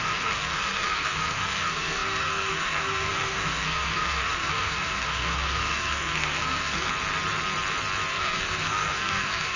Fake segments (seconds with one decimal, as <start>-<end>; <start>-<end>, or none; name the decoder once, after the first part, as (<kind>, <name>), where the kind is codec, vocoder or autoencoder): 0.0-6.9 (codec, SNAC); 8.1-9.6